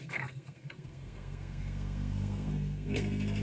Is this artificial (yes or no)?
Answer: yes